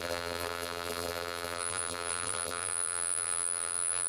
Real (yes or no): no